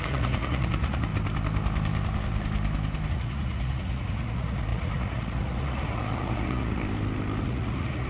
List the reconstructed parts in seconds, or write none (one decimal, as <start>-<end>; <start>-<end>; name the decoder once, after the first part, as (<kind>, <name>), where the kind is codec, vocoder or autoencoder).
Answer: 0.0-1.1 (vocoder, Vocos); 3.1-6.8; 7.4-8.1